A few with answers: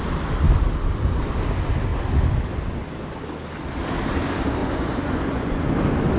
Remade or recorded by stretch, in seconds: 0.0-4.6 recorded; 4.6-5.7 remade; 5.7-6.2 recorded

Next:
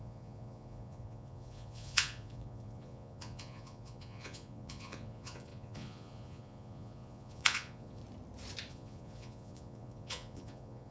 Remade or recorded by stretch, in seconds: 0.0-8.0 remade; 8.0-8.7 recorded; 8.7-10.9 remade

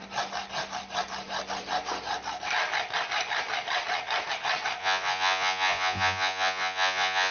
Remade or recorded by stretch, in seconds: 0.0-4.8 recorded; 4.8-7.3 remade